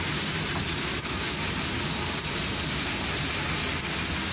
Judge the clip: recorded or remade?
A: recorded